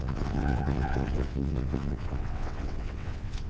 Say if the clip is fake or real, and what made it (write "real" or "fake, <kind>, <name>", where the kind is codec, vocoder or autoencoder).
fake, vocoder, WaveNeXt